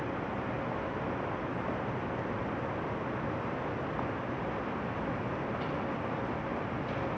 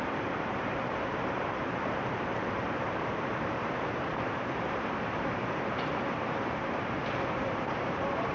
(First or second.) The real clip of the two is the first